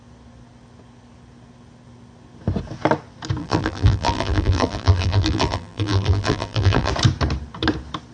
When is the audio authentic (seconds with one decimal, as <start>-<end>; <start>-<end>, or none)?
0.0-3.4; 6.9-8.1